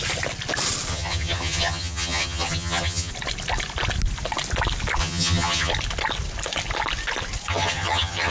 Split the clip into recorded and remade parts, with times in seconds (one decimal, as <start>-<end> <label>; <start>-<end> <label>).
0.0-0.9 recorded; 0.9-3.1 remade; 3.1-5.0 recorded; 5.0-5.7 remade; 5.7-7.5 recorded; 7.5-8.3 remade